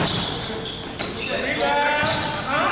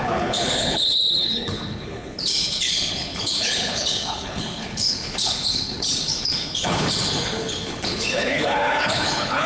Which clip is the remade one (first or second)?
second